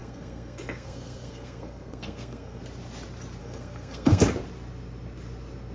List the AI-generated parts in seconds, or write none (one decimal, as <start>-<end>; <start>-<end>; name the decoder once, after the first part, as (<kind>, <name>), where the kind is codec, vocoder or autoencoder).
0.0-2.6 (codec, SNAC); 3.4-4.2